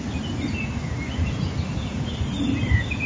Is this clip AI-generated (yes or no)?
no